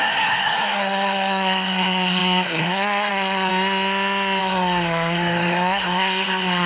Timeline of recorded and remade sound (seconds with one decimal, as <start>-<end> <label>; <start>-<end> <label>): 0.0-3.5 remade; 3.5-4.4 recorded; 4.4-6.7 remade